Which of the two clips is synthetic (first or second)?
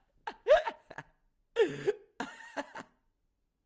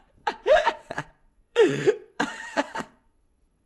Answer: second